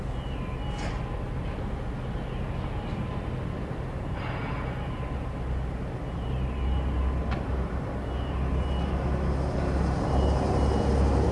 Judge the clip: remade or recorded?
recorded